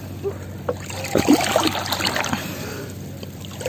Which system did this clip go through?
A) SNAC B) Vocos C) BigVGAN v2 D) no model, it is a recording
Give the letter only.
C